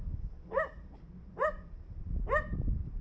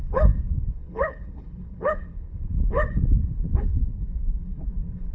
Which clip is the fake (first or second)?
second